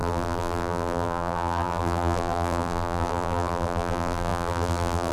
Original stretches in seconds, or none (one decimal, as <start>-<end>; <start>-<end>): none